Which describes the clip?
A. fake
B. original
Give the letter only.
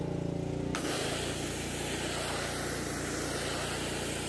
B